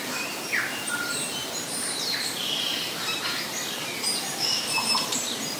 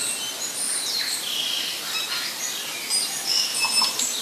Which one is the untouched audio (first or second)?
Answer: second